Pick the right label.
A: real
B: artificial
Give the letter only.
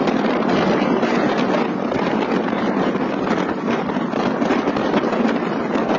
A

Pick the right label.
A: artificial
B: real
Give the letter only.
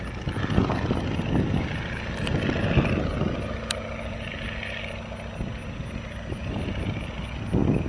B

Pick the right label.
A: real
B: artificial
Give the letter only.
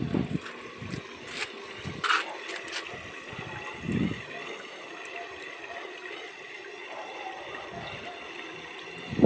A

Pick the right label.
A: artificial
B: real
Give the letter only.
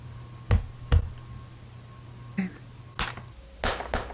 B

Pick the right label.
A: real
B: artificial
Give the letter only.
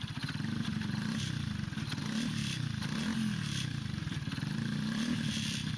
A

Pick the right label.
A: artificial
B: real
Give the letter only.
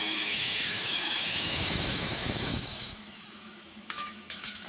A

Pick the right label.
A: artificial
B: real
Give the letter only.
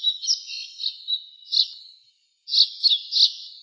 B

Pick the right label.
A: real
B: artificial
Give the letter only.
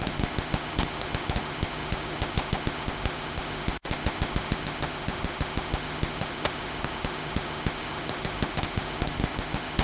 B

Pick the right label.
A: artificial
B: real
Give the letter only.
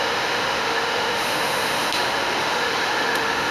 A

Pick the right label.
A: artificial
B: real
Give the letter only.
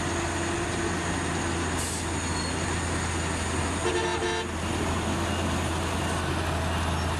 B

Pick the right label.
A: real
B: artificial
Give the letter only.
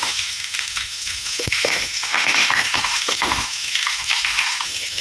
B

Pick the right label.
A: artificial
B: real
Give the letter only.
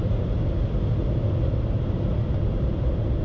B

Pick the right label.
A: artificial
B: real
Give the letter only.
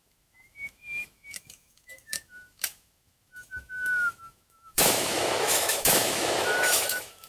A